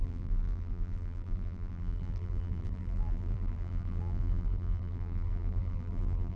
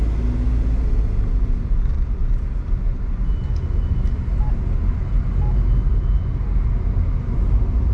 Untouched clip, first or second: second